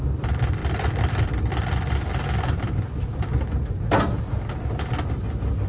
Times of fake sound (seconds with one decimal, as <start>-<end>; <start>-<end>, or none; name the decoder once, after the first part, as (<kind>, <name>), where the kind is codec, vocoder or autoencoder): 0.6-1.5 (vocoder, BigVGAN v2)